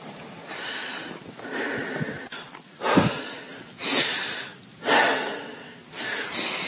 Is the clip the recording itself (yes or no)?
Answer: yes